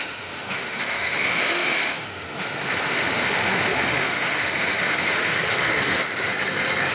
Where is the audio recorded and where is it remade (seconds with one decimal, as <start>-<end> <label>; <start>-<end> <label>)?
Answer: 0.0-6.3 remade; 6.3-6.9 recorded